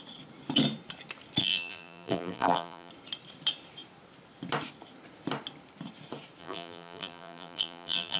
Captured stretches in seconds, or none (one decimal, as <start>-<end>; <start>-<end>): 0.0-1.4; 2.9-6.4

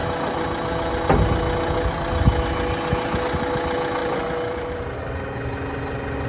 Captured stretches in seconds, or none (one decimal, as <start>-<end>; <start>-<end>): 0.0-4.0; 4.8-6.3

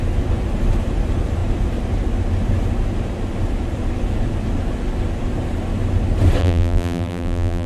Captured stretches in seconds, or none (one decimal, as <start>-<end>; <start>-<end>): 0.0-6.4

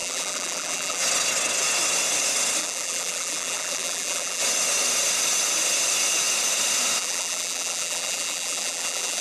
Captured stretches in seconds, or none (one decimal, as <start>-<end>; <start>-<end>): 1.0-2.6; 4.4-7.0

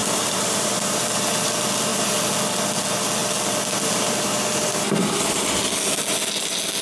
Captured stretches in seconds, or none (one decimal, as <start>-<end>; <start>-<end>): 1.0-6.8

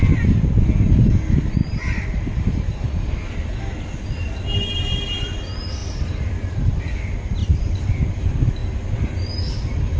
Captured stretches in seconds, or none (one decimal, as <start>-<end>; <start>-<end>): 0.0-1.6; 3.1-5.8; 6.8-7.4; 7.9-10.0